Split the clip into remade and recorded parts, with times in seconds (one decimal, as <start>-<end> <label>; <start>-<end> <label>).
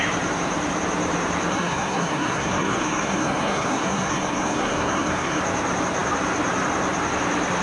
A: 0.0-1.5 recorded; 1.5-5.4 remade; 5.4-7.6 recorded